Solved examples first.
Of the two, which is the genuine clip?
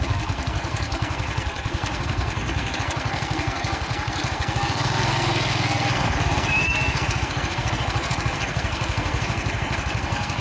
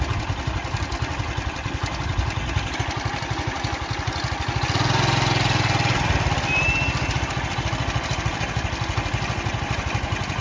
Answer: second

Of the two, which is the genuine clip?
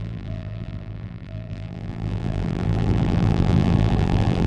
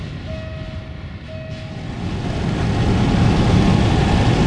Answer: second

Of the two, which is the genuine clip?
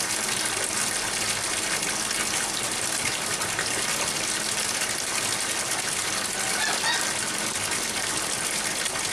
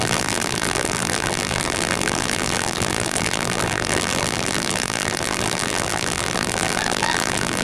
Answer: first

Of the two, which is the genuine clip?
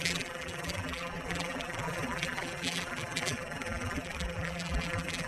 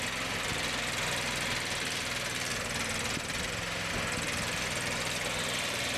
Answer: second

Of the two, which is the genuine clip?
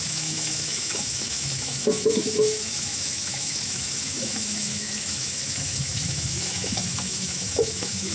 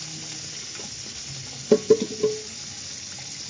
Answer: second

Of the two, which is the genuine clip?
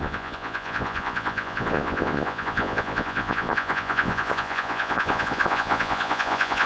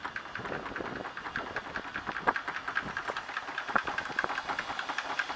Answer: second